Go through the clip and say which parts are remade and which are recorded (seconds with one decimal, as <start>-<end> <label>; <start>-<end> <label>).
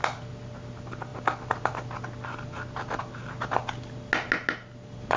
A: 0.0-5.2 recorded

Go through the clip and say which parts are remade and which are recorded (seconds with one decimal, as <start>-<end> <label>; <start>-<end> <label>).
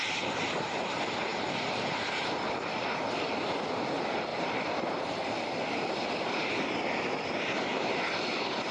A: 0.0-4.3 recorded; 4.3-5.0 remade; 5.0-8.7 recorded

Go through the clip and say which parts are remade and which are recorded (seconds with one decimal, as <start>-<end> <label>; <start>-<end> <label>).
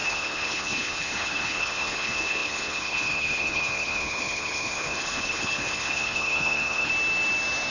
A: 0.0-6.9 remade; 6.9-7.7 recorded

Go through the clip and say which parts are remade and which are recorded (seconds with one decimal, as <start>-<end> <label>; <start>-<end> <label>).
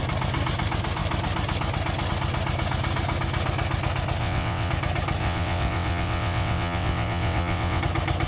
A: 0.0-4.2 recorded; 4.2-4.7 remade; 4.7-5.2 recorded; 5.2-7.8 remade; 7.8-8.3 recorded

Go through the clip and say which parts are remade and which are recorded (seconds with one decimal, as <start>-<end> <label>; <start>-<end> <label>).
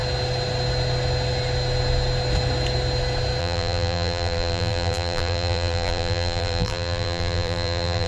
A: 0.0-3.4 recorded; 3.4-8.1 remade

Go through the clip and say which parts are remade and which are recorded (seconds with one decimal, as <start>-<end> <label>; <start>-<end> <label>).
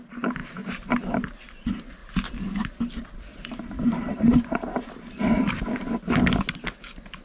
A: 0.0-3.3 recorded; 3.3-5.6 remade; 5.6-7.2 recorded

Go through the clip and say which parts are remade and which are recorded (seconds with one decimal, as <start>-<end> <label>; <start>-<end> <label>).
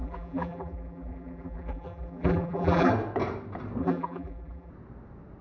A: 0.0-2.9 remade; 2.9-3.8 recorded; 3.8-4.7 remade; 4.7-5.4 recorded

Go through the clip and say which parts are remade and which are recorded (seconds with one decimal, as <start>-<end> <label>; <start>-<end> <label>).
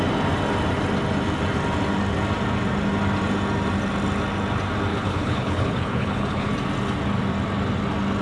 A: 0.0-4.9 recorded; 4.9-6.5 remade; 6.5-8.2 recorded